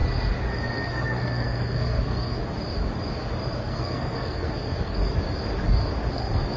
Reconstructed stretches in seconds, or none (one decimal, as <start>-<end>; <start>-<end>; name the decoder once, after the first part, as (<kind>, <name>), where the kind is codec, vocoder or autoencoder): 0.7-2.4 (codec, SNAC); 3.6-5.0; 6.1-6.6